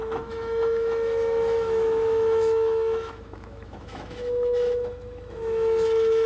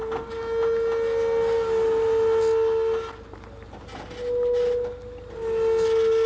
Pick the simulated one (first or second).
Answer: first